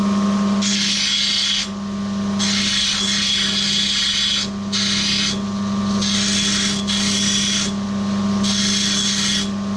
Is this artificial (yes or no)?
no